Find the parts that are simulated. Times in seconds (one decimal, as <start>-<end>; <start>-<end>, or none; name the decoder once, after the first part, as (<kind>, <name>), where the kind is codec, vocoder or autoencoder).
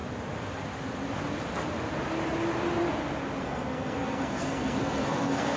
3.4-5.6 (codec, SNAC)